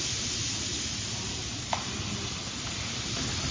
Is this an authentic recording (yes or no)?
yes